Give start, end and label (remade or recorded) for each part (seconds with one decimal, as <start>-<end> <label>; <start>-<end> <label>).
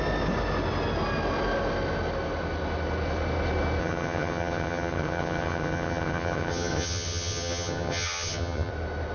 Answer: 0.0-3.8 recorded; 3.8-8.7 remade; 8.7-9.1 recorded